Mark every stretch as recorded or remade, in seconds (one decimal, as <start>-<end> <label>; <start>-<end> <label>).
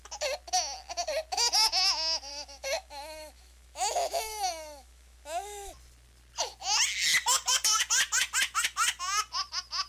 0.0-2.3 recorded; 2.3-5.7 remade; 5.7-9.9 recorded